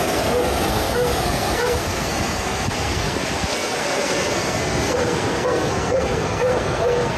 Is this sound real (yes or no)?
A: no